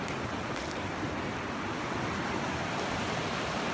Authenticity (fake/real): real